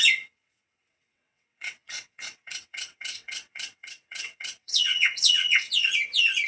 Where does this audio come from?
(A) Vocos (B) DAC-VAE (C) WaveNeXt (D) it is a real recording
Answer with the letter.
C